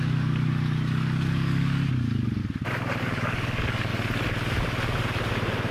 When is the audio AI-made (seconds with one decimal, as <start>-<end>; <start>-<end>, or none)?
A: 0.0-2.4; 3.0-3.9